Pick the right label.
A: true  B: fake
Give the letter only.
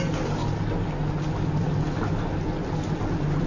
A